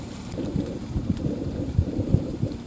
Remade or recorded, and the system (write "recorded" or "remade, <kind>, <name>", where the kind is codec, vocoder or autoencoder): remade, vocoder, BigVGAN v2